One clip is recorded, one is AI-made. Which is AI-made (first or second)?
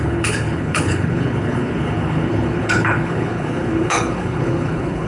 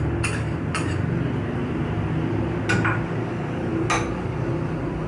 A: first